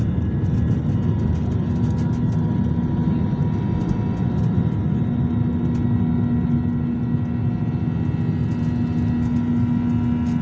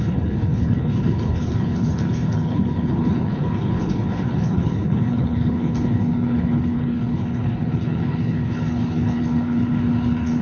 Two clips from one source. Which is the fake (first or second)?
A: second